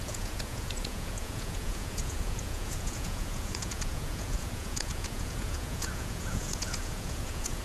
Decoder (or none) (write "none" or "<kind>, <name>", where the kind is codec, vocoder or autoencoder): vocoder, Vocos